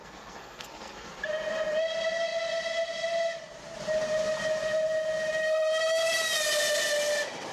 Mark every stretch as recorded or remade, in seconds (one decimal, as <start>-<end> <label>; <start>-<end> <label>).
0.0-1.1 remade; 1.1-7.5 recorded